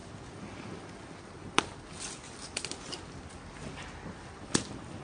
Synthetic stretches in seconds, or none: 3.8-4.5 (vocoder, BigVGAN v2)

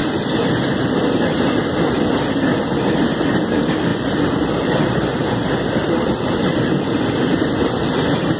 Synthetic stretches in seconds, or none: 3.9-4.8 (vocoder, BigVGAN v2); 5.2-6.6

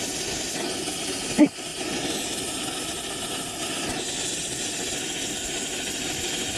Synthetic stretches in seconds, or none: none

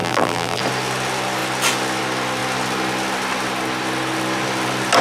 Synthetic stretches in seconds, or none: 0.0-0.6 (vocoder, BigVGAN v2)

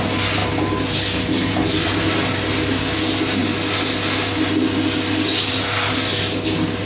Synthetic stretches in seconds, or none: none